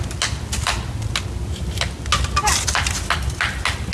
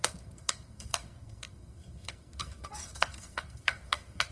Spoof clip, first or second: second